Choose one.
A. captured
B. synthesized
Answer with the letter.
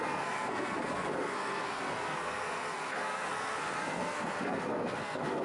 B